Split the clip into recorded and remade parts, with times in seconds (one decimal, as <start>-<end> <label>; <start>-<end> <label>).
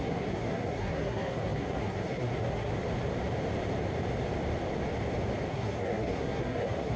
0.0-2.7 remade; 2.7-5.5 recorded; 5.5-7.0 remade